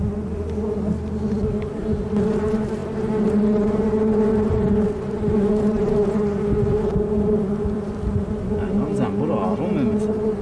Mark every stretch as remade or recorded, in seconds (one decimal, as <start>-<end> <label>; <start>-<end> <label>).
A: 0.0-6.9 recorded; 6.9-8.1 remade; 8.1-10.4 recorded